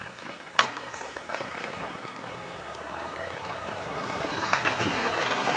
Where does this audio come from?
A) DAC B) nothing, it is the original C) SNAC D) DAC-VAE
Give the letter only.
C